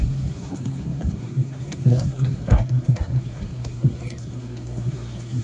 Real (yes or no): no